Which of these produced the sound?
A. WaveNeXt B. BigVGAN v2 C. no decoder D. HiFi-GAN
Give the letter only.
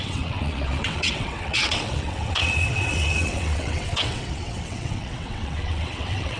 A